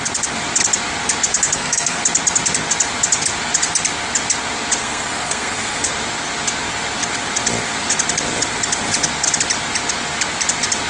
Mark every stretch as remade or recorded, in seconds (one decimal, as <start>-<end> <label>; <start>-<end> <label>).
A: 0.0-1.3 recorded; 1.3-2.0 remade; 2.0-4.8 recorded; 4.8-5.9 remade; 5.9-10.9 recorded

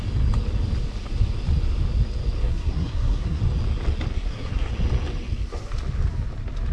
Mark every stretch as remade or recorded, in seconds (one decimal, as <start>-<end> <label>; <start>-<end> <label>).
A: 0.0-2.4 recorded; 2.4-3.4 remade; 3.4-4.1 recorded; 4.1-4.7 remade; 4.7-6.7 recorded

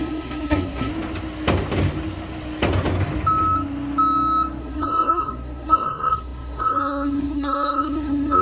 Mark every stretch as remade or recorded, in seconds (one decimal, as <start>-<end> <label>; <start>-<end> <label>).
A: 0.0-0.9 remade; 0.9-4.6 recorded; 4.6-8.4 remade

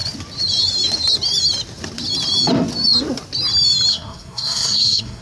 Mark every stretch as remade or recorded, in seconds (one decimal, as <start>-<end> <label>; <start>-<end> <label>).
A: 0.0-3.9 recorded; 3.9-5.2 remade